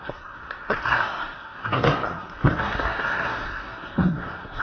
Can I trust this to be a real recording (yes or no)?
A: no